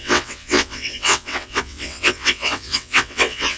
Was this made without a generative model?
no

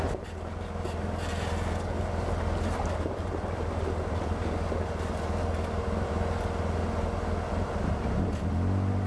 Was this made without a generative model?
yes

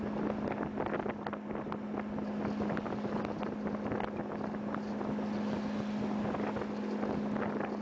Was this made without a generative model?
yes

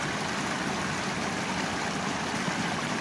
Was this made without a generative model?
yes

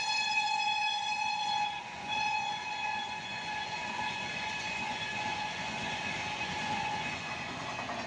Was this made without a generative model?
no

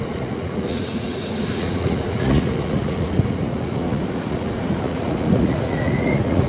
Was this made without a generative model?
no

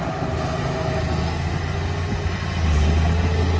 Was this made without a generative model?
yes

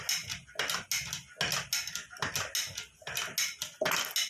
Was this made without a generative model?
yes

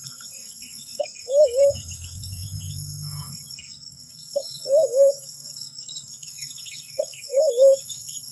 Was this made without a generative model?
no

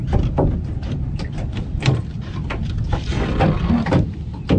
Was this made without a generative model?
yes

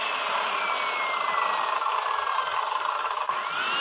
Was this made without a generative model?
yes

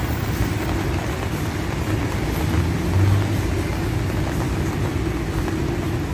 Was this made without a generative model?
yes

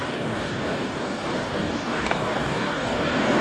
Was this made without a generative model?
no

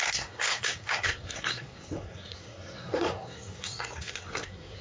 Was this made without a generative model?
no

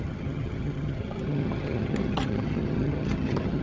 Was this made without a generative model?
no